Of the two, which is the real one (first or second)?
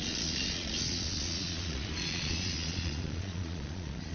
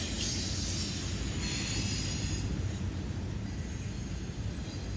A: second